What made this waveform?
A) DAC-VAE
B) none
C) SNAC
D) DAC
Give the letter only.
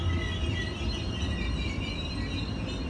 B